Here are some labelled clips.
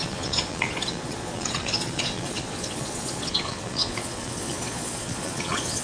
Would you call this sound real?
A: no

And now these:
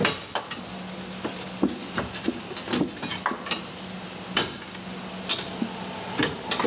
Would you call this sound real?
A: yes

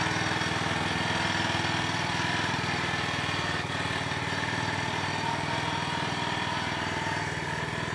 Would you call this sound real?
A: yes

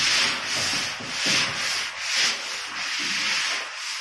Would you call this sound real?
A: yes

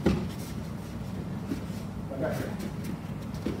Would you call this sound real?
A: yes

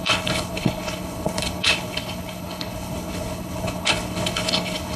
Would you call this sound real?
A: no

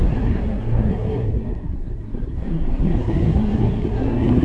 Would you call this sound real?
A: no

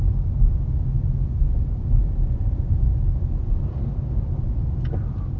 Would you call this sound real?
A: yes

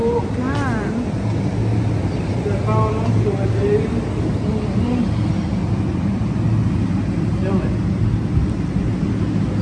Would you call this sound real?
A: yes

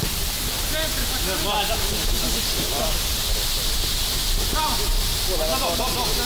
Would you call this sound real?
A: yes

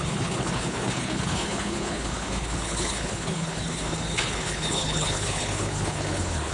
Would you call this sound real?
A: no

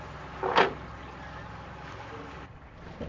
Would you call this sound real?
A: yes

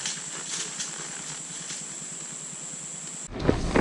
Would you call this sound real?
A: yes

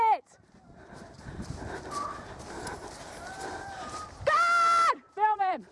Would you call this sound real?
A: no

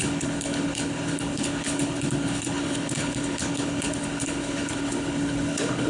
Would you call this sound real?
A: no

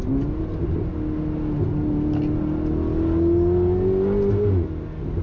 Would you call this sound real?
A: yes